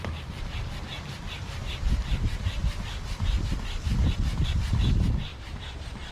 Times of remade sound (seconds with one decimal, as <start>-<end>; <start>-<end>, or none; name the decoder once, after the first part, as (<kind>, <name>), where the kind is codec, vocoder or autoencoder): 0.0-2.6 (vocoder, BigVGAN v2); 4.4-6.1